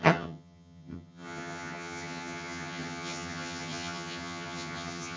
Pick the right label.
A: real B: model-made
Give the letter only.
B